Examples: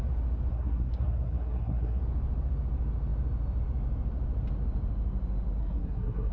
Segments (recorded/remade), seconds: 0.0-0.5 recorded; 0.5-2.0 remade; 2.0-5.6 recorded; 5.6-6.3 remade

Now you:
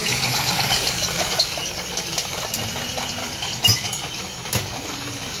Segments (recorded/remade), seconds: 0.0-2.5 remade; 2.5-3.2 recorded; 3.2-5.4 remade

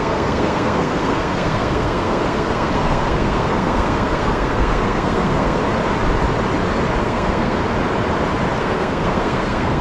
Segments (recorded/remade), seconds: 0.0-5.6 remade; 5.6-7.0 recorded; 7.0-7.6 remade; 7.6-8.6 recorded; 8.6-9.8 remade

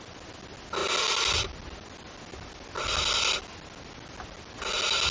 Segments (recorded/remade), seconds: 0.0-5.1 recorded